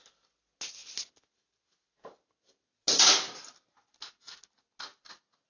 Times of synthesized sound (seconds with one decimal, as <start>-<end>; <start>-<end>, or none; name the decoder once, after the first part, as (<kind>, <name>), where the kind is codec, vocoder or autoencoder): none